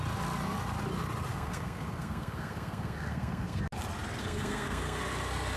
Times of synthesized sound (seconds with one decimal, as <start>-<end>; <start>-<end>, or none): 1.3-3.6; 4.2-5.0